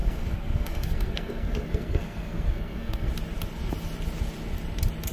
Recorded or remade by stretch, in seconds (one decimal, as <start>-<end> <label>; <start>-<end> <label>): 0.0-3.1 remade; 3.1-5.1 recorded